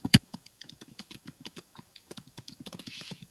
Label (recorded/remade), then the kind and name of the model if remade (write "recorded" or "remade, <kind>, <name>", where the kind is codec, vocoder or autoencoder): remade, codec, DAC